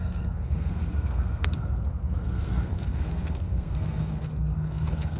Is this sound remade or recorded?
remade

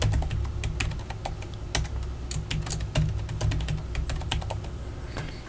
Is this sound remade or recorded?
recorded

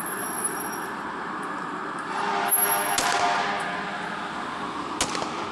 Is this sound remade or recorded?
recorded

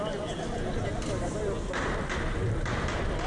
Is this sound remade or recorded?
recorded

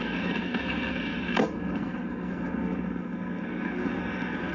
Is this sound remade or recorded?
remade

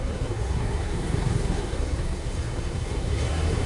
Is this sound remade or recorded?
remade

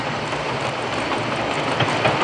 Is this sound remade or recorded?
recorded